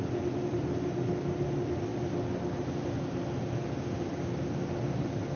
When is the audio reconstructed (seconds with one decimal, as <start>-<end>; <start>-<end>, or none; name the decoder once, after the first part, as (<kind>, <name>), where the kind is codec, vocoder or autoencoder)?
none